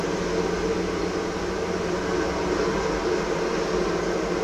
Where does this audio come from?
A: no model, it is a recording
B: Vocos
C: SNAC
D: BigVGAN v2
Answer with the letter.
A